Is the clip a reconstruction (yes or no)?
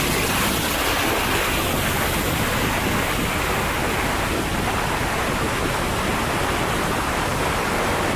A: no